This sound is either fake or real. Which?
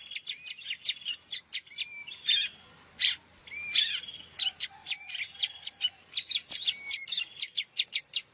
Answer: real